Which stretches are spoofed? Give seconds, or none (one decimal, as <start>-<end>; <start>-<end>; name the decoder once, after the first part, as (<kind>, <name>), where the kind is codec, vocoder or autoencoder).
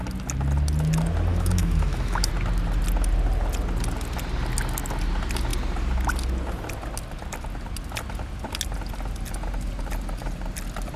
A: 1.3-2.3 (autoencoder, DAC-VAE)